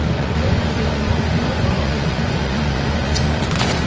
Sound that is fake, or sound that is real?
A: fake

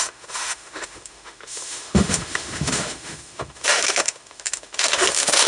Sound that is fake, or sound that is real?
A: fake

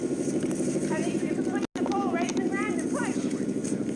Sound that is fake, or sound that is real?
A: real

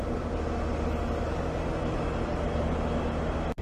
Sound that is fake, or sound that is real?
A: real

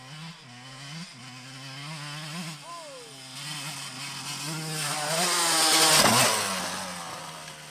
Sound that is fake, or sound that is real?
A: real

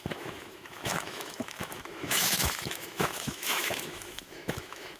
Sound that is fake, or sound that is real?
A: fake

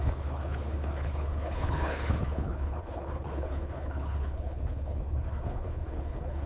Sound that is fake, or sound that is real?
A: fake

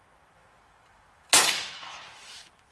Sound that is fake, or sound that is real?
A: fake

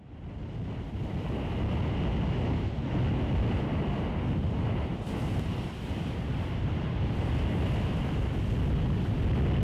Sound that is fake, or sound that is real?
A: real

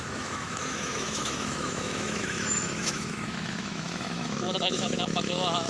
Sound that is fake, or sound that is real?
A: fake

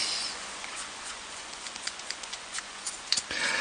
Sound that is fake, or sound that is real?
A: fake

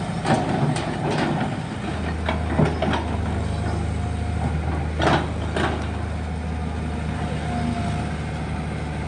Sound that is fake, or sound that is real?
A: real